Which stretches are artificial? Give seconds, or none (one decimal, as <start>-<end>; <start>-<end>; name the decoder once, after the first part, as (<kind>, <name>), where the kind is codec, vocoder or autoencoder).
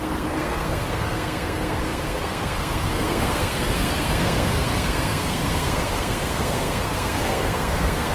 0.0-8.1 (codec, SNAC)